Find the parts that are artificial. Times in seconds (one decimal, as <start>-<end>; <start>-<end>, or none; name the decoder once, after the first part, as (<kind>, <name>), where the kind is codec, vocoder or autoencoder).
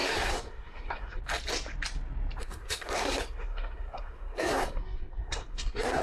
0.0-1.2 (codec, SNAC); 2.4-6.0